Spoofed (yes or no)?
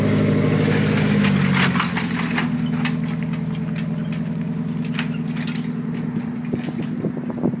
no